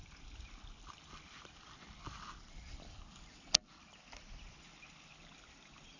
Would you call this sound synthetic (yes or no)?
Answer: no